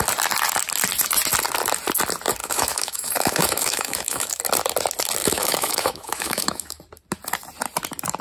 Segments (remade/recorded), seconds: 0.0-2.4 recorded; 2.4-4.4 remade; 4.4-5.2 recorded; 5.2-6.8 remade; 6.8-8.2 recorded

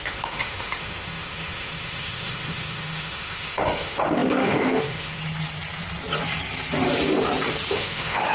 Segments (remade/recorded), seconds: 0.0-5.2 remade; 5.2-7.7 recorded; 7.7-8.3 remade

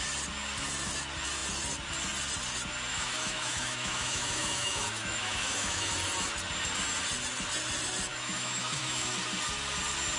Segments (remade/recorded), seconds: 0.0-2.9 recorded; 2.9-5.9 remade; 5.9-8.1 recorded; 8.1-9.1 remade; 9.1-10.2 recorded

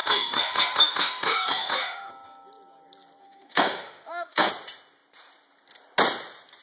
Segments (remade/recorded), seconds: 0.0-2.1 remade; 2.1-3.2 recorded; 3.2-4.5 remade; 4.5-6.6 recorded

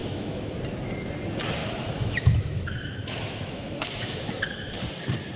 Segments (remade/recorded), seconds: 0.0-0.5 remade; 0.5-1.6 recorded; 1.6-4.8 remade; 4.8-5.4 recorded

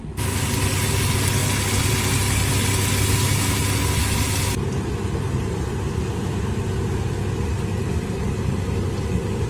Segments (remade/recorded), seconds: 0.0-9.5 recorded

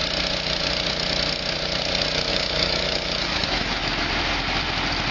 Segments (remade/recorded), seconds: 0.0-2.3 recorded; 2.3-3.9 remade; 3.9-5.1 recorded